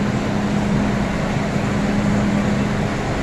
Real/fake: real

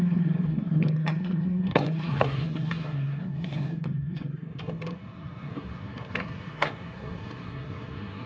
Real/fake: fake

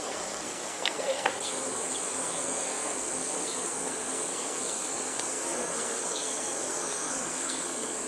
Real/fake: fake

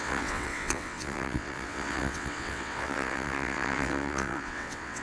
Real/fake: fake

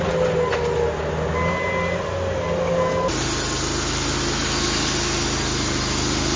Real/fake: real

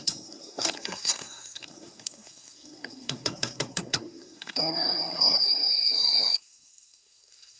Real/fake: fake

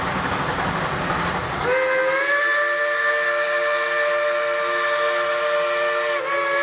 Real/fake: real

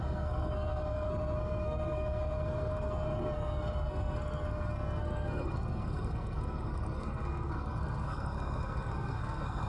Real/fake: fake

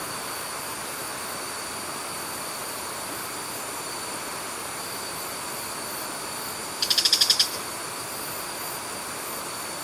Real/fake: real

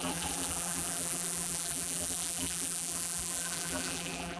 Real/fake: fake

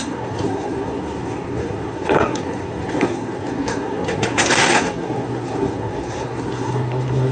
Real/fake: fake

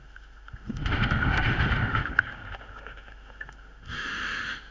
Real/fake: fake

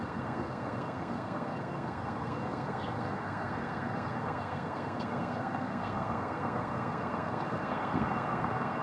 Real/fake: fake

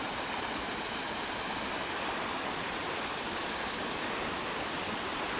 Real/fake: real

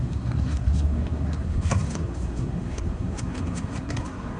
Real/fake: fake